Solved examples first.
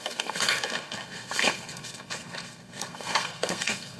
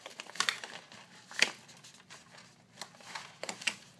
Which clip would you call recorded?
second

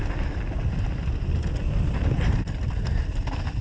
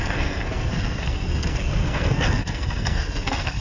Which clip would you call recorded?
first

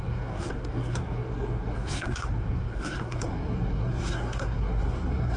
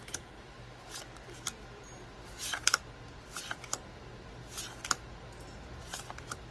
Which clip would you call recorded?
second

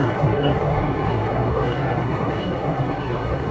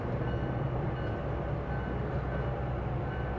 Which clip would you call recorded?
second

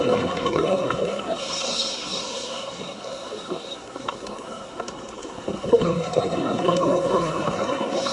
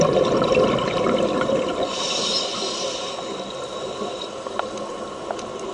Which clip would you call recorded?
second